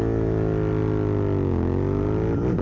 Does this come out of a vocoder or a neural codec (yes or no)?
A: no